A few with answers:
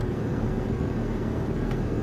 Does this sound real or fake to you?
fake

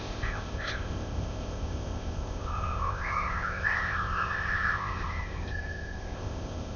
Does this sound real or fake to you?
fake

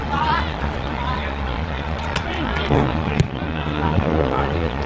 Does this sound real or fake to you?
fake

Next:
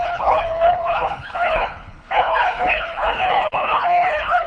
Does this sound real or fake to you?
fake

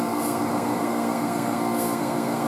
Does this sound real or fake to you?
fake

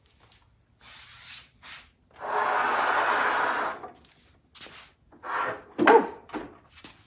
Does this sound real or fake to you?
real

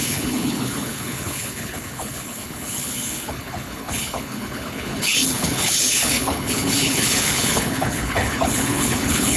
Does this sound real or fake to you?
fake